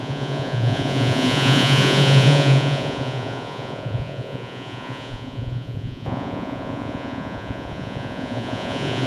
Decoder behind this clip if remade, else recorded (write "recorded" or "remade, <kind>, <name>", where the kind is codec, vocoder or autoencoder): remade, vocoder, Vocos